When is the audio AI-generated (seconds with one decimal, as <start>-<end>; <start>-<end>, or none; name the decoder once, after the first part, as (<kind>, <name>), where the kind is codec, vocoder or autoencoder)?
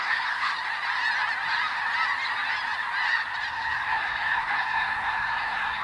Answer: 0.0-0.5 (codec, SNAC); 3.5-5.8